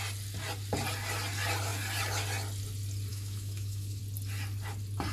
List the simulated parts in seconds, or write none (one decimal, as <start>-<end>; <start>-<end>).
3.1-4.0